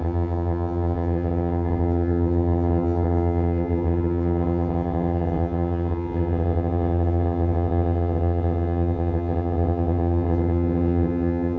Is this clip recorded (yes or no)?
no